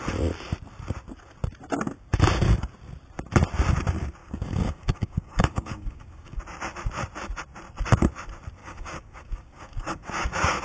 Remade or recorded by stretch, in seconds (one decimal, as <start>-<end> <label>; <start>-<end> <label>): 0.0-4.2 recorded; 4.2-6.4 remade; 6.4-8.6 recorded; 8.6-10.6 remade